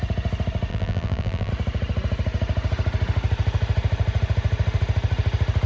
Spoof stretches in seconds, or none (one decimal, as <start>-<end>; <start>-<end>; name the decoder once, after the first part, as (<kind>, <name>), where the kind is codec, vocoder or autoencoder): 0.7-1.5 (vocoder, BigVGAN v2)